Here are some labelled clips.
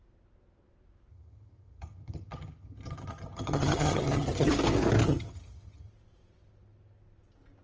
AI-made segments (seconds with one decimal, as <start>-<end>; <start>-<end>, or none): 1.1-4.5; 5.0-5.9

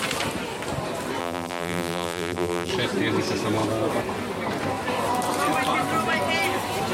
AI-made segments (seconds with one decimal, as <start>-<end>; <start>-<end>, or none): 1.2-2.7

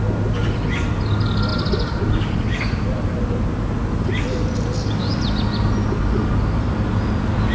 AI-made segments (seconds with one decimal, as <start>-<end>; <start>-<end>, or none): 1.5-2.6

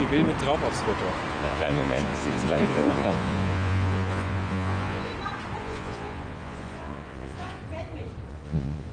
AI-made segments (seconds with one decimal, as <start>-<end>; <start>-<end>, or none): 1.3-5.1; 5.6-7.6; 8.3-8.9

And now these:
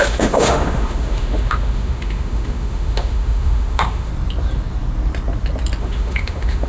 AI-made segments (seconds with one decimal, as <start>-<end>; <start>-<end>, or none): 0.0-4.1; 5.8-6.7

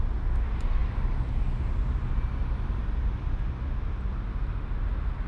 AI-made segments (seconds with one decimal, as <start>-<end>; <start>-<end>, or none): none

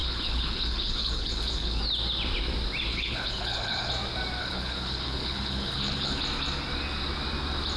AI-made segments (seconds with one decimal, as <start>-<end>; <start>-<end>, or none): 0.0-1.8; 2.9-3.9; 4.4-6.2